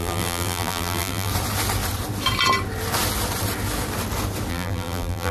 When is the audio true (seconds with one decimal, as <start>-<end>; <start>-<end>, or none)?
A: 1.3-4.5